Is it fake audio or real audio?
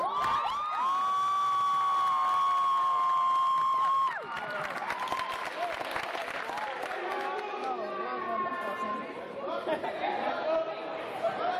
real